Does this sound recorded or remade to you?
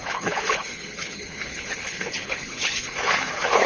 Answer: remade